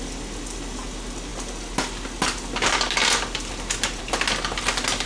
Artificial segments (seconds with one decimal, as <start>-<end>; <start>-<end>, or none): none